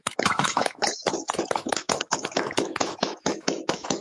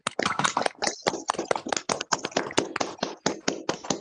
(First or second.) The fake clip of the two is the first